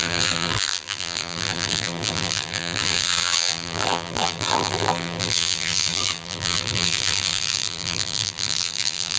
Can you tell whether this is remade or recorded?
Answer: remade